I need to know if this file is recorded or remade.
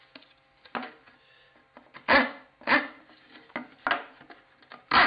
recorded